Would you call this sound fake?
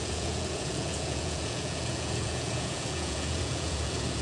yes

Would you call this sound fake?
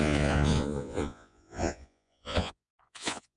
yes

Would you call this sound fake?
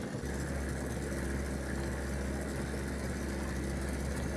no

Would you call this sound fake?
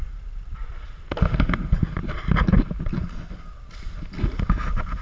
no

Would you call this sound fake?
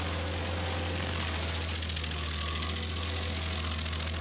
no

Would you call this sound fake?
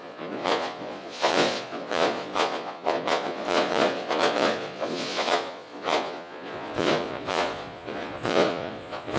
yes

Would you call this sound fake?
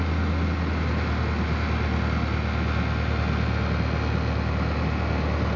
no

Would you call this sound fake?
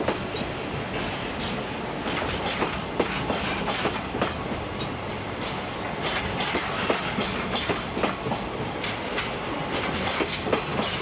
no